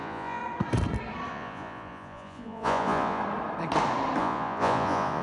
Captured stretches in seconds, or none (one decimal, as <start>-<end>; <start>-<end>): 0.4-1.3; 3.2-4.2